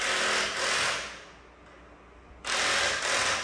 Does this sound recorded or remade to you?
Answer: recorded